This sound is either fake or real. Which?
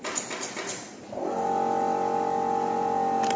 real